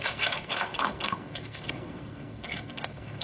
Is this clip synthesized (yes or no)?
yes